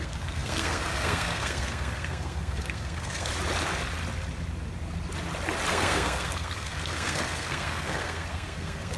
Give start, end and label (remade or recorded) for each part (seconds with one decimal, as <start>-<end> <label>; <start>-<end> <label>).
0.0-3.3 remade; 3.3-5.7 recorded; 5.7-9.0 remade